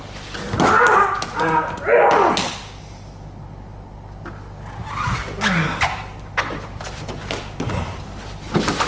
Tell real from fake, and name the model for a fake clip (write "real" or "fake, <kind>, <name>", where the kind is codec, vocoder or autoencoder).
real